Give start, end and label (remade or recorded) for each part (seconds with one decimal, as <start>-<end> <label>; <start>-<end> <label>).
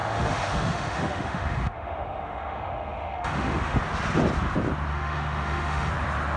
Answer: 0.0-3.8 remade; 3.8-4.9 recorded; 4.9-5.9 remade; 5.9-6.4 recorded